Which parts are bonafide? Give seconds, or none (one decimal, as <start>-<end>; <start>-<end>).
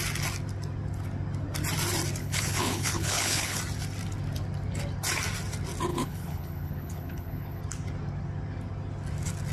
0.0-2.2; 3.6-5.9; 7.6-9.5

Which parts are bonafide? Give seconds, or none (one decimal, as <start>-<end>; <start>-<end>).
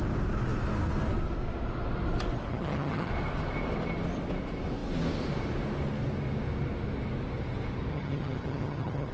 0.0-2.5; 3.1-7.9